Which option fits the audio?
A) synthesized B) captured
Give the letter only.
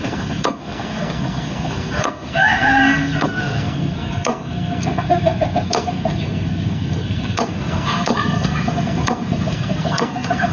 A